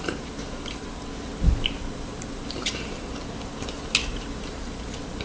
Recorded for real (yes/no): yes